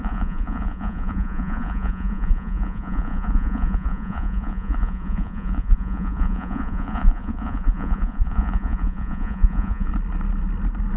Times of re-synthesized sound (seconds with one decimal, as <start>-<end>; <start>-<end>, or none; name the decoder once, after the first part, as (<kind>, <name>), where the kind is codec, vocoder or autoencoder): 0.0-9.9 (vocoder, Vocos)